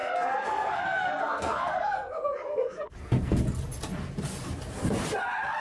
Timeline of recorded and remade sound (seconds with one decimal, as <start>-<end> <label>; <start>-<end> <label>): 0.0-3.4 remade; 3.4-5.6 recorded